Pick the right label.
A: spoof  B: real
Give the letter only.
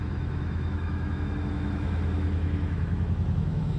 A